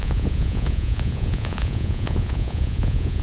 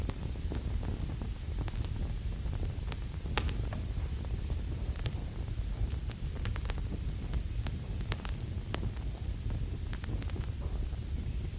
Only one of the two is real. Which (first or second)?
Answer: second